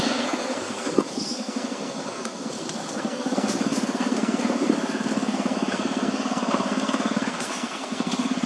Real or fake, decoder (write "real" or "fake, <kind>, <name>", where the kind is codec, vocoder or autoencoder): fake, codec, SNAC